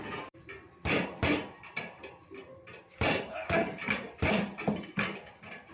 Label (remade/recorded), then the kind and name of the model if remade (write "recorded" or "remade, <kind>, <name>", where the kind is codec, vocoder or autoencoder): remade, vocoder, BigVGAN v2